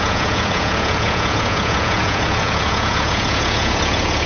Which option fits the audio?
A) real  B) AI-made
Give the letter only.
B